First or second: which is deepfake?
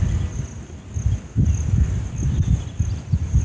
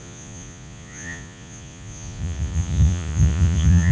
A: second